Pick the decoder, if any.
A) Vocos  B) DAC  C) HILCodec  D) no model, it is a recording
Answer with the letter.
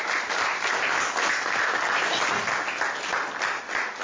D